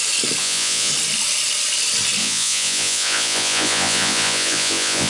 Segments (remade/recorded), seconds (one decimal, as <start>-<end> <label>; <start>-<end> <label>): 0.0-0.4 recorded; 0.4-0.9 remade; 0.9-2.2 recorded; 2.2-5.1 remade